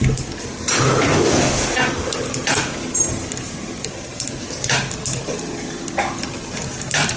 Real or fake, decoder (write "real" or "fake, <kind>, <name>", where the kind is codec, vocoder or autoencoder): real